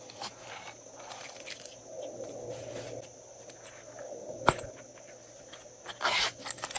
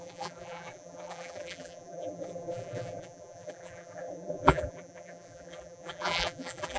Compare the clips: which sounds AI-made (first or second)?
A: second